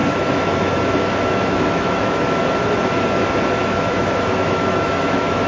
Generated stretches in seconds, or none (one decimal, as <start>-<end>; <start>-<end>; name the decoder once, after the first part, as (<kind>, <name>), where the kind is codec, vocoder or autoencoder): 0.0-2.4 (autoencoder, DAC-VAE); 3.6-5.5